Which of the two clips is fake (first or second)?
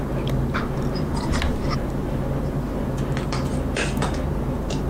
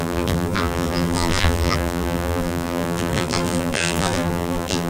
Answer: second